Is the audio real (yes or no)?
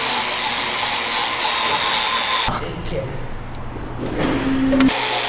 yes